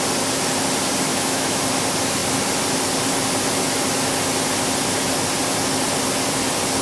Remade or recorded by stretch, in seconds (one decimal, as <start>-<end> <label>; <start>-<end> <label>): 0.0-1.1 recorded; 1.1-1.6 remade; 1.6-6.8 recorded